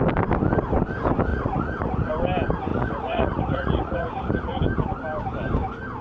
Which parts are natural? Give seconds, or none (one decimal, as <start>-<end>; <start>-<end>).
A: 0.0-1.3; 2.1-2.7; 4.6-6.0